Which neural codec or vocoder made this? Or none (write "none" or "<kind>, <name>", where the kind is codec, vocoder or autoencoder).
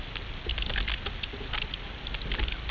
none